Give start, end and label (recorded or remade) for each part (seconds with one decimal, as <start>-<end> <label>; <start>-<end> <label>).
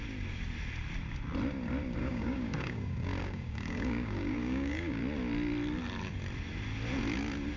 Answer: 0.0-2.0 recorded; 2.0-5.0 remade; 5.0-7.6 recorded